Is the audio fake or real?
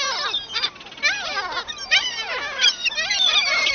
real